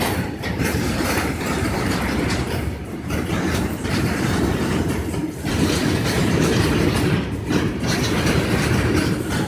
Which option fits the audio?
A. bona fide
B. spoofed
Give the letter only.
B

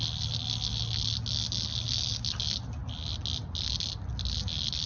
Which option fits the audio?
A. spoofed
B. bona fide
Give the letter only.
B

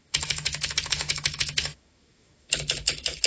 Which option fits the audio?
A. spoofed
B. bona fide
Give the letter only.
A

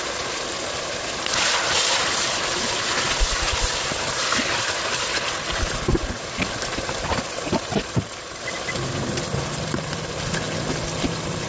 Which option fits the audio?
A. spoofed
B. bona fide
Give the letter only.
A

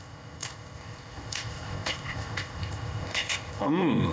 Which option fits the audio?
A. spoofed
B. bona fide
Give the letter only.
A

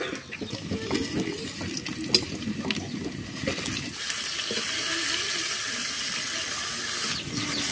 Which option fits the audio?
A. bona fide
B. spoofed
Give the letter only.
A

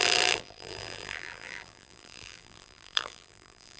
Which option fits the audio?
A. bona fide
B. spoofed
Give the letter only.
B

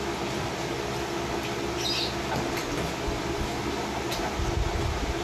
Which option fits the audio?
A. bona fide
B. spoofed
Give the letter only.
A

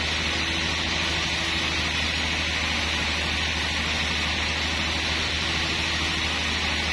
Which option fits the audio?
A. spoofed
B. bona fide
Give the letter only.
B